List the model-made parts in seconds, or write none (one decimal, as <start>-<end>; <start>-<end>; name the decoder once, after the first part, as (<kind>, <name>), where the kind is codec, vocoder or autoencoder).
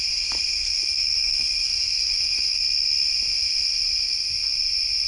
0.0-2.6 (autoencoder, DAC-VAE)